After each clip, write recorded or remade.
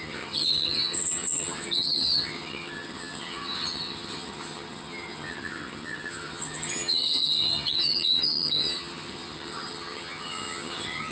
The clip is remade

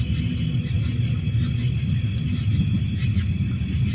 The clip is recorded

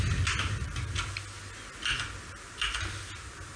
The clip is recorded